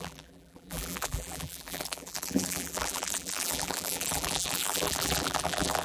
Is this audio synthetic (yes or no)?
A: yes